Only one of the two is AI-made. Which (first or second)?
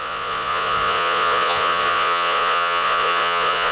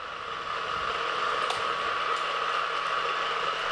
first